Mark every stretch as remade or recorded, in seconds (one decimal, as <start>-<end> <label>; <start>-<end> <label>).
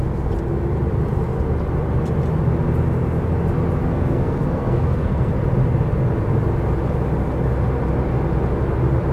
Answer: 0.0-3.8 recorded; 3.8-5.3 remade; 5.3-9.1 recorded